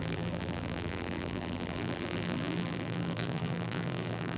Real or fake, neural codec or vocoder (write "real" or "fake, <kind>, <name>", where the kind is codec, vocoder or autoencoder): fake, vocoder, BigVGAN v2